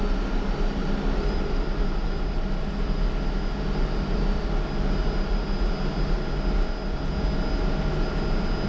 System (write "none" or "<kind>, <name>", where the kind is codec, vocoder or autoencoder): none